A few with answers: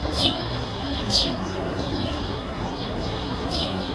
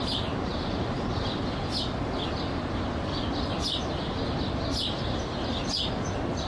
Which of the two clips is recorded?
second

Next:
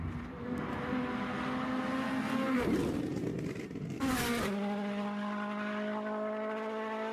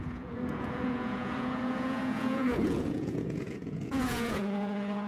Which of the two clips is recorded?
first